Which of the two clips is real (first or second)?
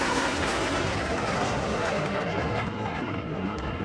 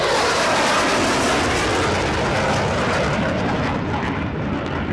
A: second